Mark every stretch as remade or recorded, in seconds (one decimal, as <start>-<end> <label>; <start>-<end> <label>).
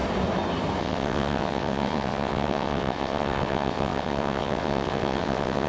0.0-0.8 recorded; 0.8-5.7 remade